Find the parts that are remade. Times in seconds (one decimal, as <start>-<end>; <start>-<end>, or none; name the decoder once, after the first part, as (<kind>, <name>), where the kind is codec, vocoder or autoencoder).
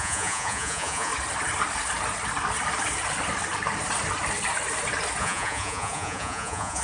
0.0-1.1 (vocoder, Vocos); 5.2-6.8